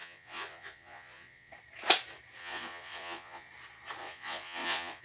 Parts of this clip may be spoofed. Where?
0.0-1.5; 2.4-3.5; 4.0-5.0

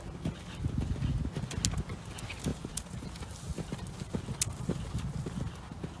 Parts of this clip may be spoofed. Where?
2.5-3.2

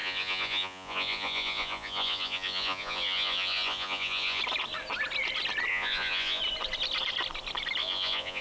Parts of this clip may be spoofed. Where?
0.0-4.4; 5.7-6.4; 7.8-8.4

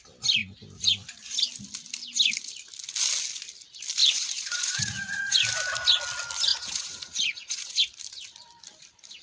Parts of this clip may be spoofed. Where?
4.0-5.3; 6.5-7.8

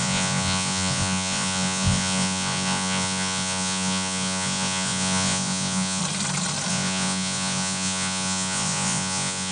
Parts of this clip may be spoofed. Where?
0.0-6.0; 6.7-9.5

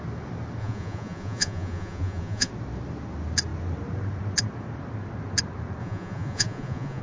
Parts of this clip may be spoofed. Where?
0.6-2.5; 5.8-7.0